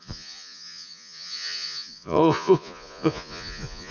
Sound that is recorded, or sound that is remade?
remade